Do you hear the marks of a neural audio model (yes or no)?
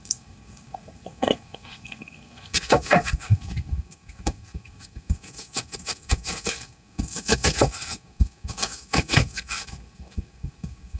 yes